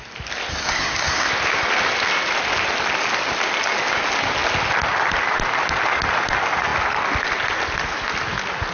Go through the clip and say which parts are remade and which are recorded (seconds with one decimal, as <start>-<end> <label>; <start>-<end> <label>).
0.0-0.5 recorded; 0.5-1.3 remade; 1.3-8.7 recorded